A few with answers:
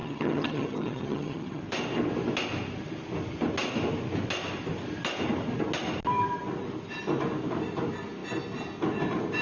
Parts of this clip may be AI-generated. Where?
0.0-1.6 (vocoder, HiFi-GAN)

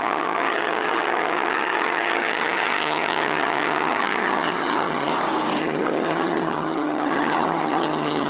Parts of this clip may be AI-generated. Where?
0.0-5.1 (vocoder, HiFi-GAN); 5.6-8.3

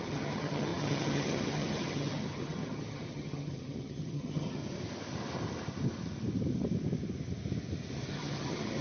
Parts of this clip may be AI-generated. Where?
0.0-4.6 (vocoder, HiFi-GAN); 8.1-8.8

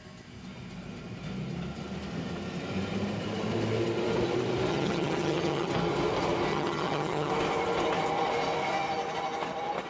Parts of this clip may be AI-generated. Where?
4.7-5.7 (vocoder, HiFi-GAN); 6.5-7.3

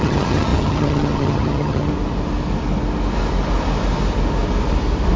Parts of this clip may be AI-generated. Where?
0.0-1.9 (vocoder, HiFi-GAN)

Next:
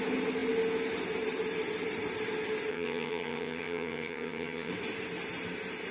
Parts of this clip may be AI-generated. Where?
2.7-4.7 (vocoder, HiFi-GAN)

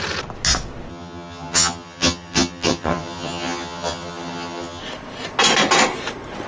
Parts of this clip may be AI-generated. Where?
0.9-4.8 (vocoder, HiFi-GAN)